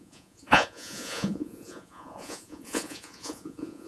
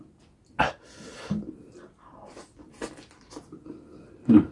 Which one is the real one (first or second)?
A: second